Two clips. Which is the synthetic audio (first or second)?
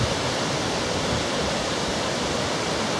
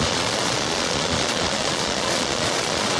second